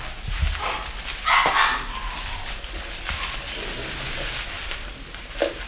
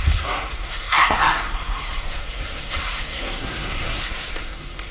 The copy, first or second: second